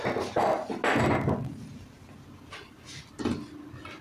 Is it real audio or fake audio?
real